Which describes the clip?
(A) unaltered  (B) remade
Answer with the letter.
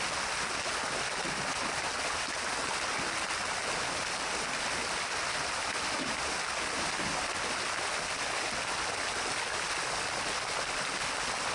A